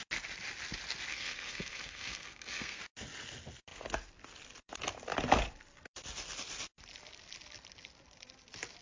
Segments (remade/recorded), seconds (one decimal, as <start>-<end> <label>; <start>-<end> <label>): 0.0-1.1 recorded; 1.1-2.8 remade; 2.8-8.8 recorded